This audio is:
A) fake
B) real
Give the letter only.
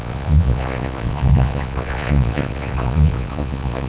A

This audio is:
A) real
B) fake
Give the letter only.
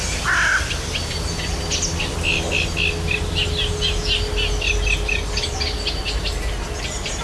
A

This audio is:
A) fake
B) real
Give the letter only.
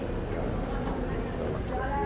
B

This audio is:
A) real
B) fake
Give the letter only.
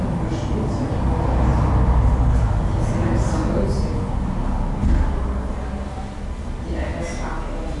A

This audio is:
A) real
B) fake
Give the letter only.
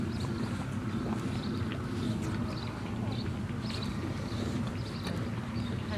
A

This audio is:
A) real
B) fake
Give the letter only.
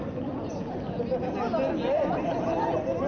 A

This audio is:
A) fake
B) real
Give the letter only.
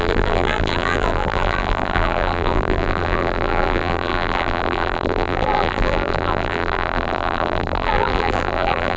A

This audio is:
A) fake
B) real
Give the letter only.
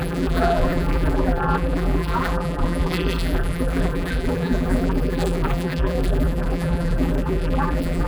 A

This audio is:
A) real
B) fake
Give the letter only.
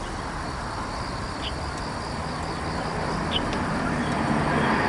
A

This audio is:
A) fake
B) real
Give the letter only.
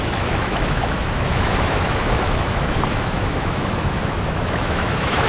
A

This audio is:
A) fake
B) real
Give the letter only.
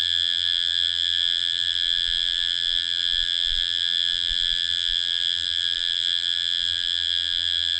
A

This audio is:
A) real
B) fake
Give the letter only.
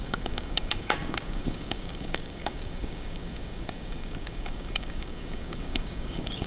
B